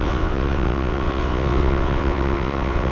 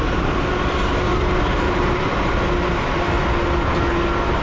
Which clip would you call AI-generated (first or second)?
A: first